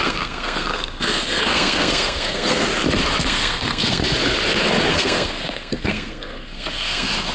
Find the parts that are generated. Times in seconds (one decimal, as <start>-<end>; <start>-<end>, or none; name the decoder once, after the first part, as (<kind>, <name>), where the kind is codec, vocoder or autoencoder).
0.0-2.6 (codec, SNAC); 3.2-4.0; 4.9-7.3